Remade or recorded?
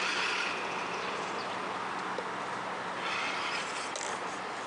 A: recorded